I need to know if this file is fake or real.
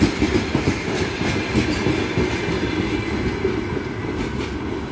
real